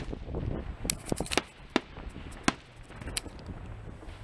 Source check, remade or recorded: recorded